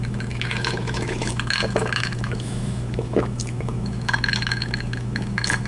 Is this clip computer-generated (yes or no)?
yes